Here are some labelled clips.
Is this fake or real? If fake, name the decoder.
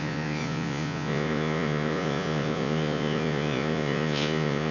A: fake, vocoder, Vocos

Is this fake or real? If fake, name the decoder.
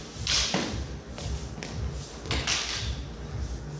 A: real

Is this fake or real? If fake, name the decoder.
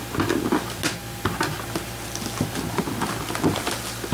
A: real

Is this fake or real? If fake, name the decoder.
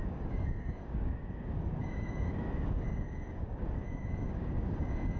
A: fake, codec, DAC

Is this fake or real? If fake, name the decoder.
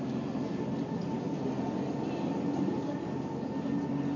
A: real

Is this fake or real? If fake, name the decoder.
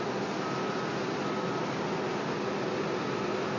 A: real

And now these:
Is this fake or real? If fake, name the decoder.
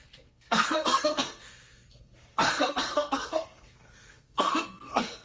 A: fake, codec, SNAC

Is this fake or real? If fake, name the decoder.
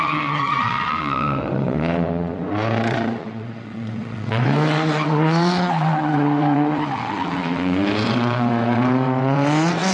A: fake, vocoder, WaveNeXt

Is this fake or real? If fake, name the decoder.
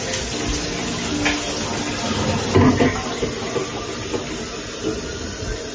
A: real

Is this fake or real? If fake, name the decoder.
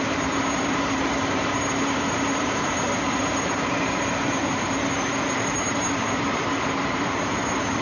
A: fake, vocoder, BigVGAN v2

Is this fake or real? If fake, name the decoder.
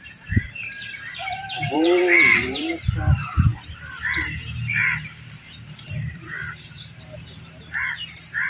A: fake, vocoder, BigVGAN v2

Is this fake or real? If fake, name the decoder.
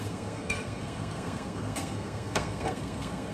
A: fake, codec, SNAC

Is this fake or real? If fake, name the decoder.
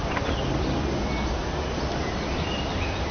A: real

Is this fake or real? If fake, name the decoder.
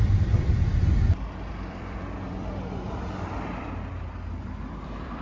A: fake, vocoder, BigVGAN v2